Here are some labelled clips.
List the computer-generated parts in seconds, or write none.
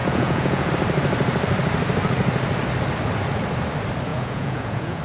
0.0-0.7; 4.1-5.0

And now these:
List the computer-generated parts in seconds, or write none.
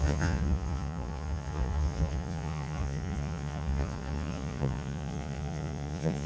0.0-6.3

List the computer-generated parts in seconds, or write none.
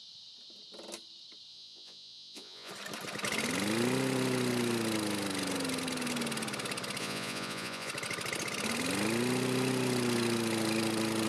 1.5-2.7; 7.0-7.9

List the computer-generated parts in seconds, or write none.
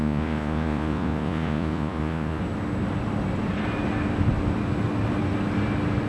0.0-2.4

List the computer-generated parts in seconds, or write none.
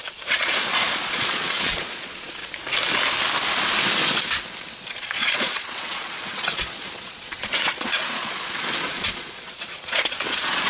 0.0-2.4; 4.9-10.7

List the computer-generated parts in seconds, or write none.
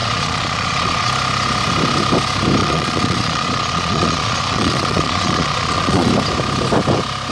0.0-1.1; 2.6-6.1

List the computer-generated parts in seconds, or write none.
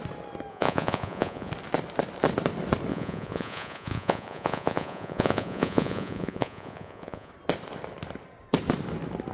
0.5-1.5; 2.9-7.3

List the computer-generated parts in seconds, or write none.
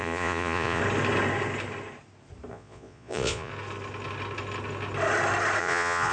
0.0-0.8; 2.5-3.5; 5.6-6.1